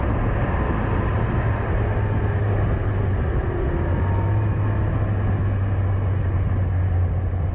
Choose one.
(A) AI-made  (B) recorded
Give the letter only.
B